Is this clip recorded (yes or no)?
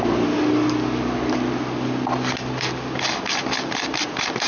yes